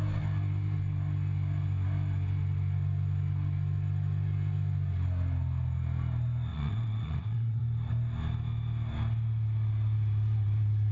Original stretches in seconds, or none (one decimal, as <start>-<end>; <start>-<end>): 0.0-6.5; 7.6-10.9